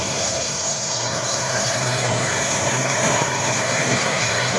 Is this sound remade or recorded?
remade